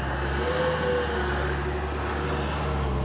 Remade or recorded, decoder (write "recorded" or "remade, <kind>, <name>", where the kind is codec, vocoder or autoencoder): recorded